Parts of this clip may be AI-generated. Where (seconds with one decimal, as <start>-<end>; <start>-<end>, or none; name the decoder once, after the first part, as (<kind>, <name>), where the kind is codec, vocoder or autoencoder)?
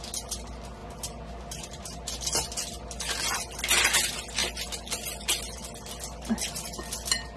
none